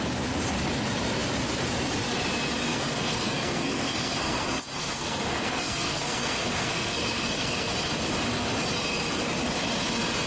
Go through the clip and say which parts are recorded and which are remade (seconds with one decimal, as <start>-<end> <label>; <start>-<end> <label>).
0.0-2.7 recorded; 2.7-7.7 remade; 7.7-10.3 recorded